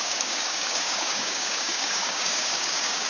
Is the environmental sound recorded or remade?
remade